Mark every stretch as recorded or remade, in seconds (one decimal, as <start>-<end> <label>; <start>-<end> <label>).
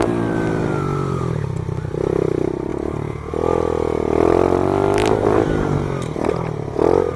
0.0-7.2 recorded